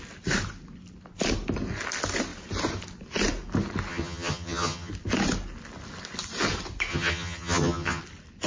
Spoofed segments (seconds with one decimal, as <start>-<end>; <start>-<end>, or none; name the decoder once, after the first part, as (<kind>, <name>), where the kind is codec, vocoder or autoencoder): 3.9-4.9 (vocoder, HiFi-GAN); 6.9-8.0